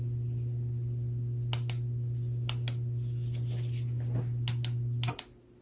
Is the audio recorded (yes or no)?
yes